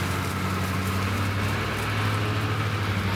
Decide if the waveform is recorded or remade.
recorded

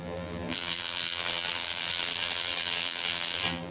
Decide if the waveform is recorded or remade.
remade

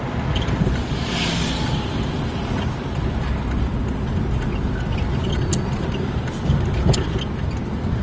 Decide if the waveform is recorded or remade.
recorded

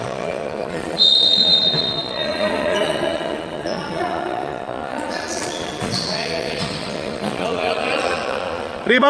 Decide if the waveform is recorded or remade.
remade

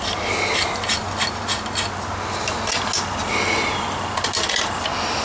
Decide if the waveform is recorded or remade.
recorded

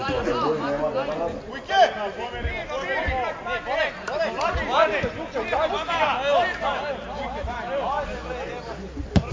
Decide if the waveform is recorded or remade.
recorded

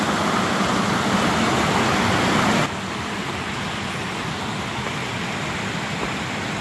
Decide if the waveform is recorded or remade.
recorded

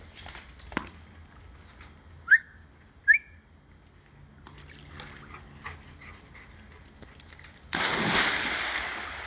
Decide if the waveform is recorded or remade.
recorded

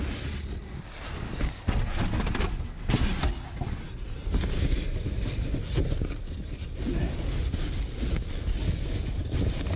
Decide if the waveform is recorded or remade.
recorded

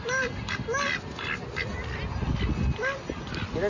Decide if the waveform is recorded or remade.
recorded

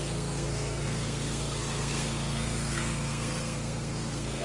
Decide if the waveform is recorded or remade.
remade